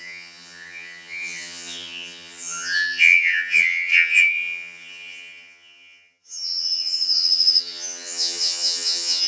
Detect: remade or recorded remade